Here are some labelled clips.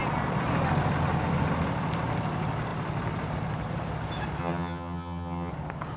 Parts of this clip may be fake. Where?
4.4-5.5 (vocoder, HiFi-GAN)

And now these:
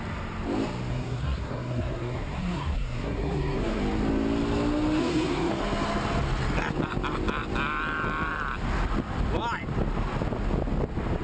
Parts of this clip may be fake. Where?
0.9-3.8 (codec, SNAC); 5.0-5.5

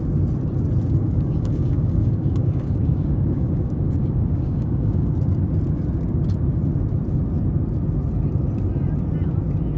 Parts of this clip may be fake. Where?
1.0-5.1 (codec, DAC)

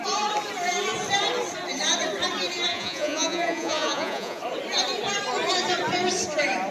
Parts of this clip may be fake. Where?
2.7-4.4 (vocoder, Vocos)

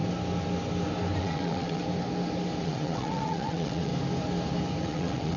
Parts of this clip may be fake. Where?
1.2-1.8 (vocoder, WaveNeXt); 2.6-3.9; 4.8-5.4

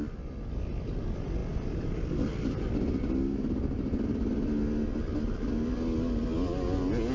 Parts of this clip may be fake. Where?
none

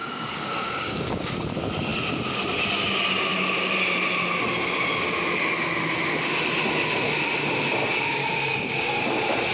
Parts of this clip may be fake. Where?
0.0-1.5 (codec, DAC); 8.2-9.0

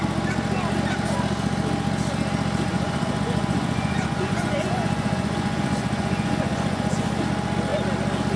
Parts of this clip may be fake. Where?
2.7-7.1 (vocoder, Vocos)